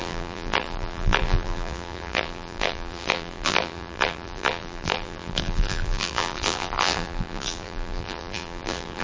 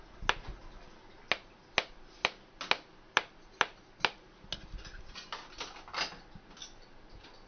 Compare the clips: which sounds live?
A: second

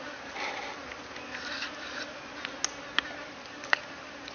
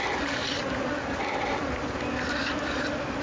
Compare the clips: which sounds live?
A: first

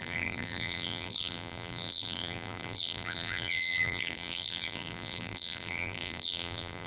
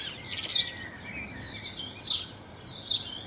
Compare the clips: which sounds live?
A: second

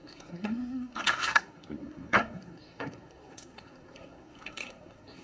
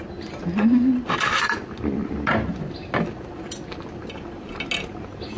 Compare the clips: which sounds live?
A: second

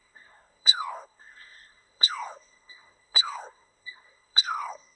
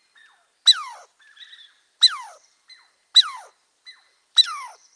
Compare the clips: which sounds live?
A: second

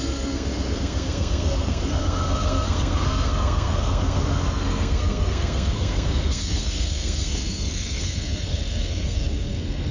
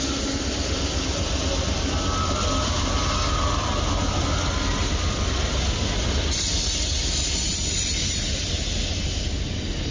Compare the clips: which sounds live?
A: second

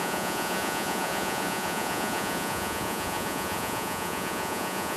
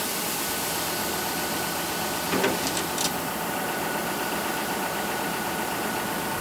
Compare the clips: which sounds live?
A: second